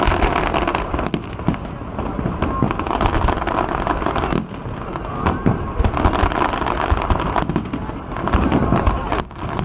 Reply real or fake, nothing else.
real